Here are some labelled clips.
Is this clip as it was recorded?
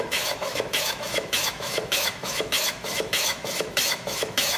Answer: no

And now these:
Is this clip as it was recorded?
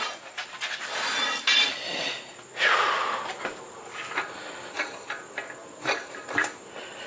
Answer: no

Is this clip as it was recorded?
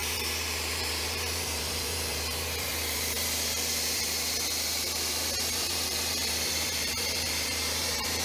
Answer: no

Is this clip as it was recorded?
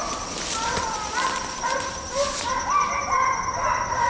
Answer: yes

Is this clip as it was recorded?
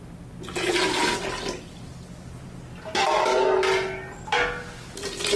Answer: yes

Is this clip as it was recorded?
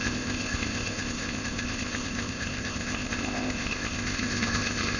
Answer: no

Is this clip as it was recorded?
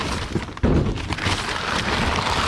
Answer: yes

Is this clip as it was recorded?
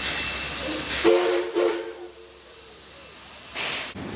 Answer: yes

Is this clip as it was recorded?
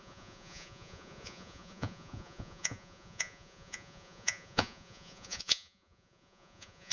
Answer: no